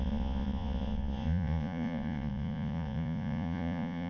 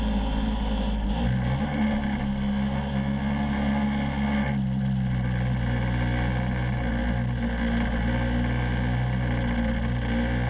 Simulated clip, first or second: first